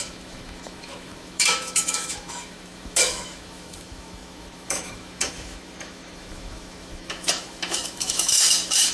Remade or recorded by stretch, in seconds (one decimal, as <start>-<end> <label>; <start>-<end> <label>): 0.0-8.9 remade